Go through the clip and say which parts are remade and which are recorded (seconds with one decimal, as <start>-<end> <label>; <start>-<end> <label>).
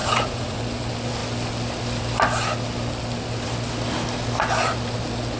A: 0.0-0.6 remade; 0.6-5.4 recorded